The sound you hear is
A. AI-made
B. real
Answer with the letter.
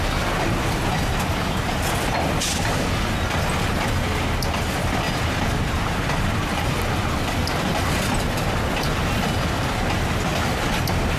B